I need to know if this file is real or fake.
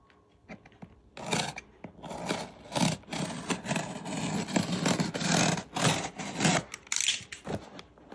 real